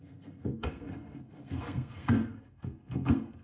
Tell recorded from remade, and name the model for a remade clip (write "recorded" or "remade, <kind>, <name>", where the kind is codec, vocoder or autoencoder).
remade, codec, SNAC